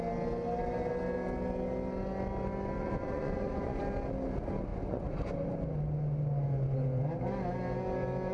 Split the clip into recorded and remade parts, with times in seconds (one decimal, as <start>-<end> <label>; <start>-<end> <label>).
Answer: 0.0-2.8 recorded; 2.8-3.8 remade; 3.8-4.7 recorded; 4.7-5.3 remade; 5.3-8.3 recorded